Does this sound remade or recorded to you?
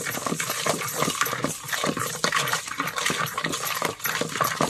recorded